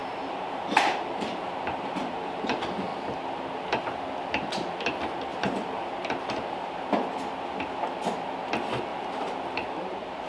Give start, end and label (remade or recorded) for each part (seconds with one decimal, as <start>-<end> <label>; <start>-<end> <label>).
0.0-2.4 remade; 2.4-5.3 recorded; 5.3-6.7 remade; 6.7-8.9 recorded; 8.9-10.3 remade

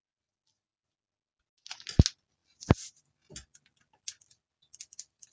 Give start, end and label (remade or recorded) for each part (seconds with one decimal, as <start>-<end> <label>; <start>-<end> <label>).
0.0-5.3 recorded

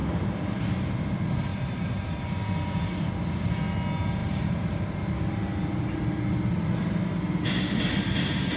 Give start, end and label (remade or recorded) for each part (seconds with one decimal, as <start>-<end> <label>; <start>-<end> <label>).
0.0-0.6 remade; 0.6-1.5 recorded; 1.5-2.1 remade; 2.1-4.2 recorded; 4.2-4.8 remade; 4.8-8.6 recorded

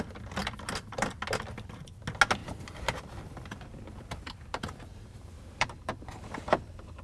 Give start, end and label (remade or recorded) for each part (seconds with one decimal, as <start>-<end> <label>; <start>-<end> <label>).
0.0-0.4 recorded; 0.4-1.2 remade; 1.2-2.4 recorded; 2.4-6.0 remade; 6.0-7.0 recorded

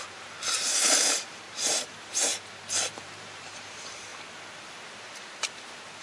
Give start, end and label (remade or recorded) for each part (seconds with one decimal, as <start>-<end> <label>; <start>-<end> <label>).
0.0-2.3 remade; 2.3-2.9 recorded; 2.9-4.1 remade; 4.1-4.7 recorded; 4.7-6.0 remade

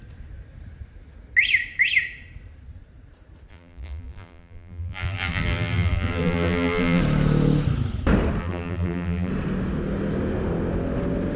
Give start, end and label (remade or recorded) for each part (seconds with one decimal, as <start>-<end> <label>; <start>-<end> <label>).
0.0-3.5 recorded; 3.5-7.0 remade; 7.0-8.4 recorded; 8.4-9.3 remade; 9.3-11.4 recorded